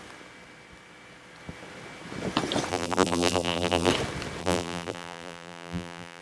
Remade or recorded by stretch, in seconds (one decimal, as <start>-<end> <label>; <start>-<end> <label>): 0.0-2.7 recorded; 2.7-3.9 remade; 3.9-4.4 recorded; 4.4-6.2 remade